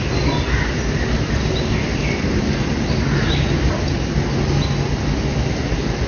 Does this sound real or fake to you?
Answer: real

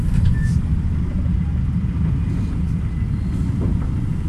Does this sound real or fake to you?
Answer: real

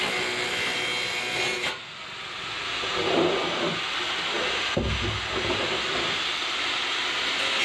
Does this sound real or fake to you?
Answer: real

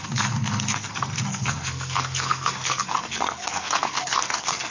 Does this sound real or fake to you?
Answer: fake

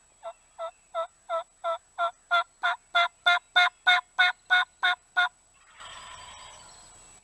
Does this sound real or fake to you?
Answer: real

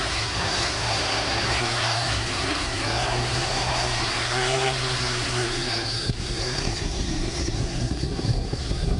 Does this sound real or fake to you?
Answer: fake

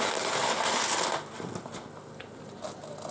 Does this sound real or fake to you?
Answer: real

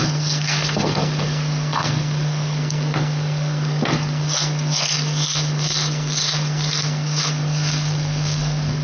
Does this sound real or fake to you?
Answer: fake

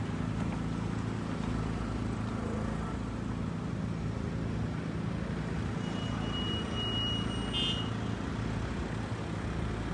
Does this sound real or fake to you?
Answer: real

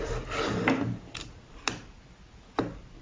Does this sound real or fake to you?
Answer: real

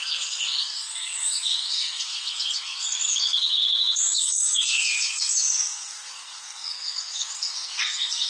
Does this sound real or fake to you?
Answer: fake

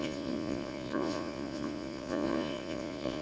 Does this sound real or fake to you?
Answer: fake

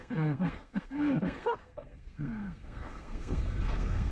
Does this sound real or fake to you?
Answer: fake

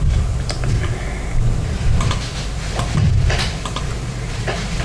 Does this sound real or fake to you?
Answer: fake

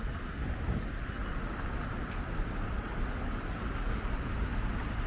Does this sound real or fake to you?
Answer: real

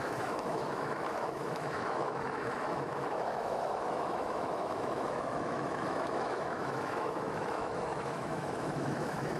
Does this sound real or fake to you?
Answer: fake